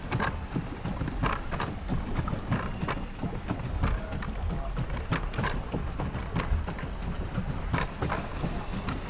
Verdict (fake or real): real